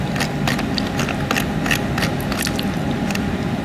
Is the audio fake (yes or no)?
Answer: no